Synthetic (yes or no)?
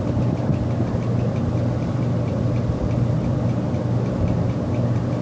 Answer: no